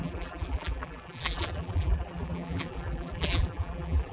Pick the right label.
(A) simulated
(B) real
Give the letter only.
A